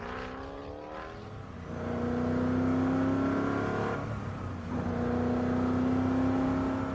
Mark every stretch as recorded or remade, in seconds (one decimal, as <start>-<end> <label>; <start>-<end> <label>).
0.0-6.9 recorded